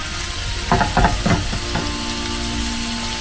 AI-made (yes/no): no